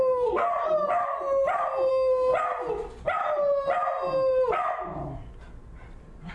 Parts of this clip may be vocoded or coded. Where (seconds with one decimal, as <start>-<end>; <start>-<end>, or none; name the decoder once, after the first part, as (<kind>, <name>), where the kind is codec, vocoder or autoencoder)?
0.0-0.5 (codec, SNAC); 1.9-2.3